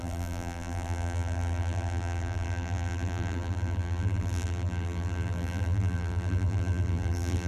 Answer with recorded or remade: remade